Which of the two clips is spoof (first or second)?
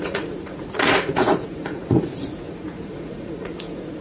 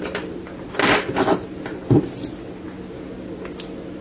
first